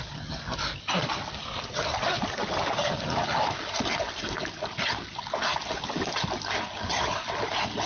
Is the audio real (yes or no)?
yes